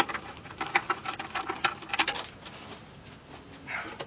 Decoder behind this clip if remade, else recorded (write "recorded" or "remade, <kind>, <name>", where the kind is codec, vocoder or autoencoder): recorded